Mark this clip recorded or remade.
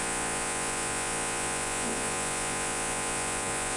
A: remade